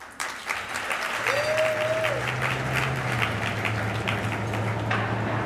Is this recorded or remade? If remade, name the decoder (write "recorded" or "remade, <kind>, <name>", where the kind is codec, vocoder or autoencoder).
recorded